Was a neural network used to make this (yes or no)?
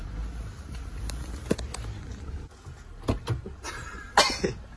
no